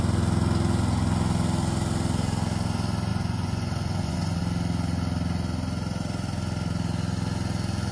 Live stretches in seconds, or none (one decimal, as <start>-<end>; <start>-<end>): 0.0-3.1; 4.4-7.9